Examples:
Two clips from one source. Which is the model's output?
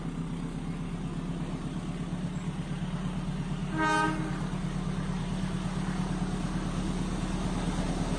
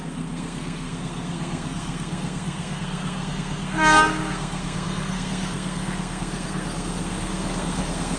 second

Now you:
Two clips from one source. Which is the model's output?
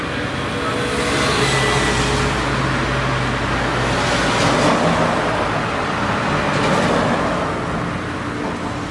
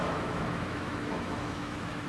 second